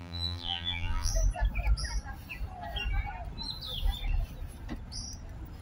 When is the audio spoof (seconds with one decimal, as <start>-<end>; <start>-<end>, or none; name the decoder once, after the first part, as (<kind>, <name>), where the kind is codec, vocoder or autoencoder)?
0.0-1.1 (vocoder, BigVGAN v2)